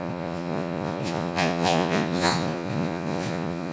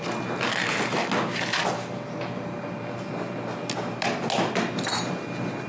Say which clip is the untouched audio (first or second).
second